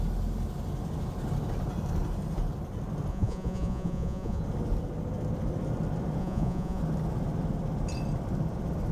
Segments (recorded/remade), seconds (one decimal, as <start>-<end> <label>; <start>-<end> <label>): 0.0-3.1 recorded; 3.1-4.4 remade; 4.4-6.2 recorded; 6.2-6.8 remade; 6.8-8.9 recorded